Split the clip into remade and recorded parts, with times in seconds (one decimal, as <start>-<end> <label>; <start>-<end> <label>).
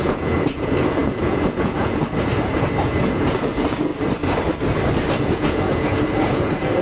0.0-3.9 remade; 3.9-5.2 recorded; 5.2-6.8 remade